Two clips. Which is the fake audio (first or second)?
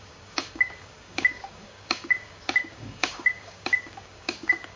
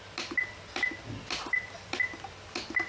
first